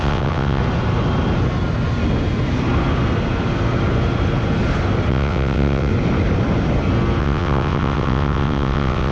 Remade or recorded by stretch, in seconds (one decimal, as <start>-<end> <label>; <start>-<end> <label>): 0.0-0.6 remade; 0.6-5.1 recorded; 5.1-5.9 remade; 5.9-7.2 recorded; 7.2-9.1 remade